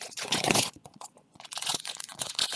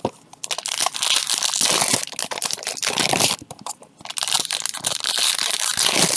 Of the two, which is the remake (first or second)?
first